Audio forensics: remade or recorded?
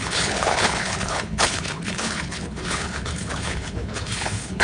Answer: remade